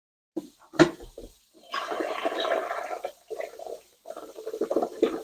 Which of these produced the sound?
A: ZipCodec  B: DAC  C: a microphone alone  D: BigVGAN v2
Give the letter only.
D